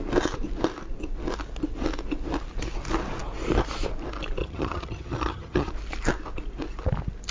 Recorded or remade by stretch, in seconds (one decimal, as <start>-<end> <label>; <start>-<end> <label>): 0.0-4.4 recorded; 4.4-5.7 remade; 5.7-7.3 recorded